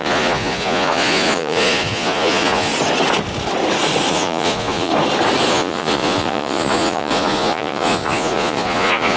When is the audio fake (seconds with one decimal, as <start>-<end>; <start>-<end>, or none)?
0.0-2.7; 4.1-4.9; 5.5-9.2